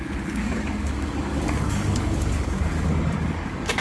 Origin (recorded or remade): remade